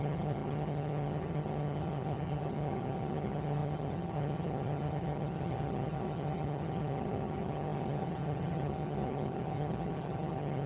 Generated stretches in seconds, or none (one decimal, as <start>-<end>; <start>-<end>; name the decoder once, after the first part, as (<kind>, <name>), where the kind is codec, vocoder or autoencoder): 0.0-10.7 (vocoder, HiFi-GAN)